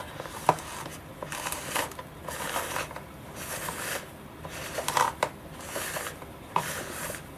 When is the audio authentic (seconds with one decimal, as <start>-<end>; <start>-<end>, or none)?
0.0-7.4